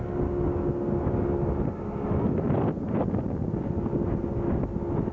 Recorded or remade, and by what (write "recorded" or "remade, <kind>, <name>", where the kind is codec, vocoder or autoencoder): recorded